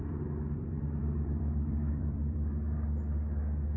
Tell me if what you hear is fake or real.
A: fake